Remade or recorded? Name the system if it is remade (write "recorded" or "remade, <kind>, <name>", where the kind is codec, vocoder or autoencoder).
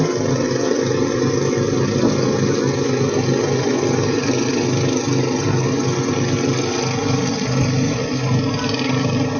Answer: recorded